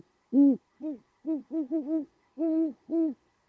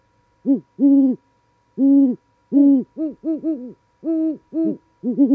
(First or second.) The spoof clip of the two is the first